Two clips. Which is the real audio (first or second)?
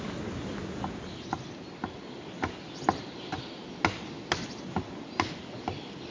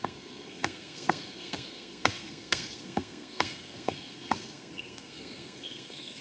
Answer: first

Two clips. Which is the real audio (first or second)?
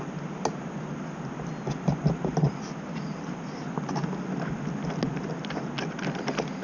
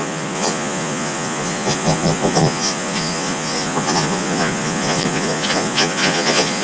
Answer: first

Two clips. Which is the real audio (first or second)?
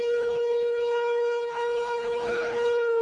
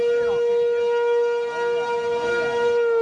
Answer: second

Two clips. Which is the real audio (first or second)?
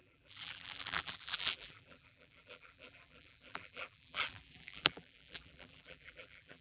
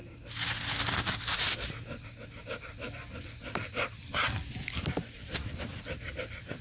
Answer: second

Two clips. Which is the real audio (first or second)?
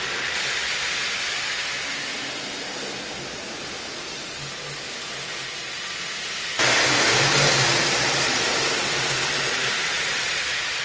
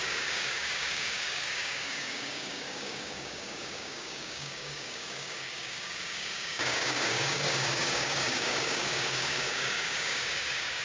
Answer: first